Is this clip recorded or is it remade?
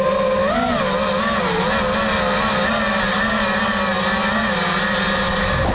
recorded